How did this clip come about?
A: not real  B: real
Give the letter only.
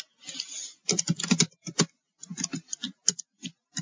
B